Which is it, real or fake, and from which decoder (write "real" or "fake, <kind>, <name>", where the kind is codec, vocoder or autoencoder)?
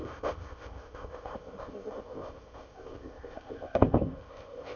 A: fake, codec, ZipCodec